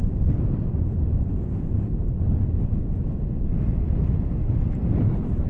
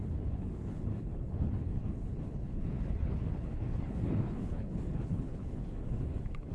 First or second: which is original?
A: first